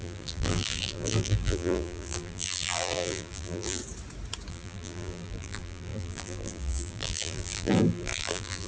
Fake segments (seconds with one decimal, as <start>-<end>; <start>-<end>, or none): 0.0-3.8; 4.5-8.7